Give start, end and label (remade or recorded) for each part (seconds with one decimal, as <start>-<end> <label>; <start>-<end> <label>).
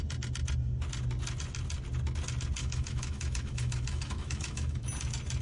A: 0.0-2.6 recorded; 2.6-4.9 remade; 4.9-5.4 recorded